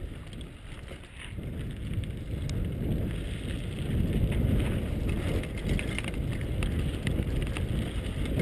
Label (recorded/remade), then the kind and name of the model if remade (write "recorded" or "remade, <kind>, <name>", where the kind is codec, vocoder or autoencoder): recorded